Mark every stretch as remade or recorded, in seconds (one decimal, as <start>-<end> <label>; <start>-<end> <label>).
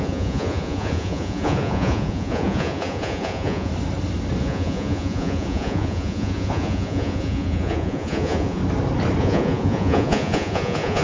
0.0-3.7 remade; 3.7-4.4 recorded; 4.4-8.6 remade; 8.6-9.2 recorded; 9.2-11.0 remade